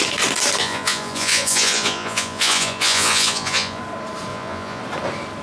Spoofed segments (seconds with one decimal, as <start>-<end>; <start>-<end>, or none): 0.6-3.8; 4.3-4.8